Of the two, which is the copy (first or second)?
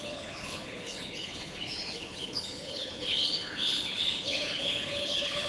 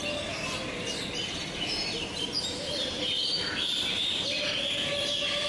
first